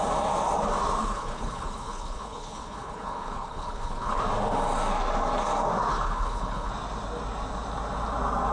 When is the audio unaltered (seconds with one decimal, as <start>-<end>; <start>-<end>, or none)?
0.0-1.0; 4.2-5.9; 6.7-8.5